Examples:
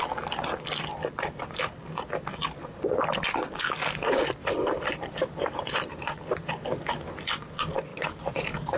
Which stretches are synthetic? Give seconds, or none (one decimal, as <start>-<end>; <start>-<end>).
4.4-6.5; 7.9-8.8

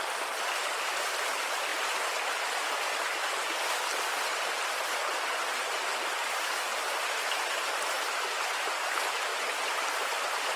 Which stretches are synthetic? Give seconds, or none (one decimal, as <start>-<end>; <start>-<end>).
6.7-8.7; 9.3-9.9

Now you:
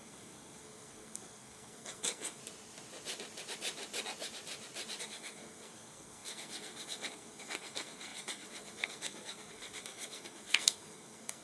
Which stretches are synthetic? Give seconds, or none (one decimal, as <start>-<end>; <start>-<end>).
0.0-2.4; 5.0-11.4

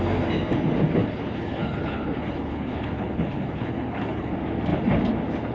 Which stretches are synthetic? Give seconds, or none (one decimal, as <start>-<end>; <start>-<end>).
1.0-4.3

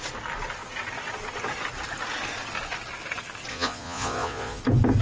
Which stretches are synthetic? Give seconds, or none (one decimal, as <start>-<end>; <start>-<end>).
3.5-4.6

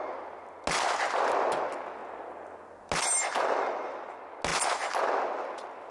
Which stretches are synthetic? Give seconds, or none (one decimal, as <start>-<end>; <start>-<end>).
none

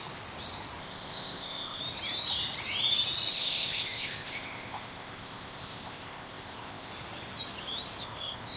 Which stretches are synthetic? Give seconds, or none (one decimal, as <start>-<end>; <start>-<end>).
0.8-1.8; 3.3-6.9; 8.0-8.6